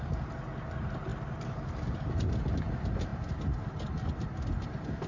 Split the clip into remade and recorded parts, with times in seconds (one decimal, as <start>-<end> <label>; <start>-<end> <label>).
0.0-5.1 recorded